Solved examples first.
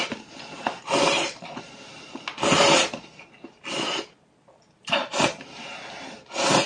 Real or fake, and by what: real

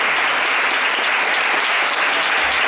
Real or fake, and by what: real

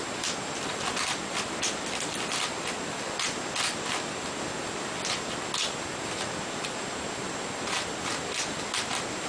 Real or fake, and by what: real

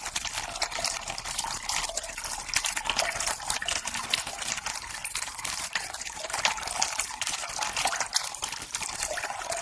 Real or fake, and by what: real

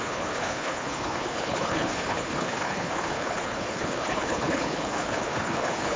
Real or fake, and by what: fake, codec, HILCodec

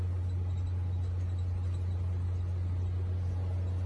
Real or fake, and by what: real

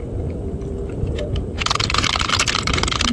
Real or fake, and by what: real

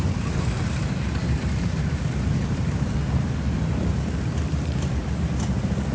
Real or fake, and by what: fake, vocoder, BigVGAN v2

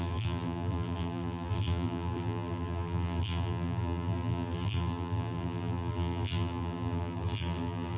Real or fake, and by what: fake, vocoder, BigVGAN v2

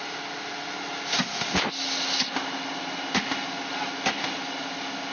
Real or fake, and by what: real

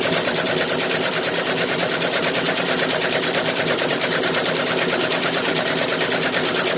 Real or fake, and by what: fake, vocoder, BigVGAN v2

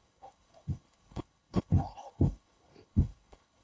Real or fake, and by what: fake, codec, HILCodec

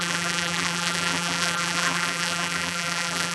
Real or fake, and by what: fake, vocoder, BigVGAN v2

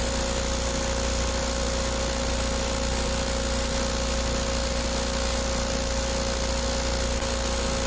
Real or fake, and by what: real